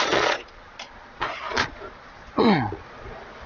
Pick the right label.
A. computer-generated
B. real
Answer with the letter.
A